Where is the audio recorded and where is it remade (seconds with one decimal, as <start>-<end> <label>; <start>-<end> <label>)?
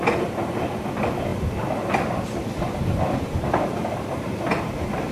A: 0.0-5.1 recorded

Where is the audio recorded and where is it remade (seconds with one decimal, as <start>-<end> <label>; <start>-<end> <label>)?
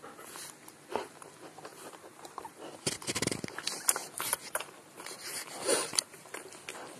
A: 0.0-1.7 recorded; 1.7-2.5 remade; 2.5-4.0 recorded; 4.0-6.4 remade; 6.4-7.0 recorded